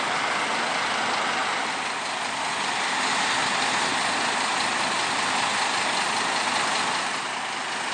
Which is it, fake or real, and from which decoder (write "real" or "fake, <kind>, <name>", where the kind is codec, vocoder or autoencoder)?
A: real